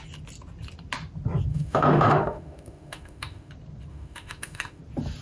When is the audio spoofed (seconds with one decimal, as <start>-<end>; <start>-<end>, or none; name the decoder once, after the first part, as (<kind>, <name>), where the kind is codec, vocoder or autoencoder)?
1.5-3.5 (autoencoder, DAC-VAE); 3.9-4.8